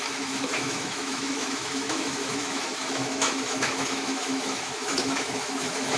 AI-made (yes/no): yes